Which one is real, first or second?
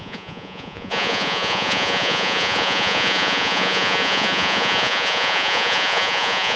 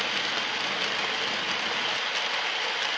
second